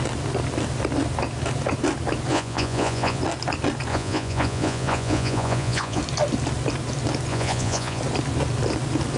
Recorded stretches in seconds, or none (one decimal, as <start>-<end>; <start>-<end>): 0.0-2.3; 3.2-3.9; 6.0-7.3; 8.0-9.2

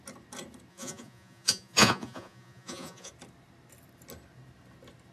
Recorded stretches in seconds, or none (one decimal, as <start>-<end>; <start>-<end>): 0.0-0.7; 3.1-5.1